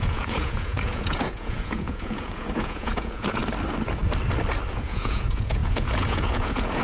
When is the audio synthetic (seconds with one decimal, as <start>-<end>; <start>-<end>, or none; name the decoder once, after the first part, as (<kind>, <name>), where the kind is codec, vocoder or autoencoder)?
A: 0.0-3.4 (vocoder, Vocos); 4.7-6.8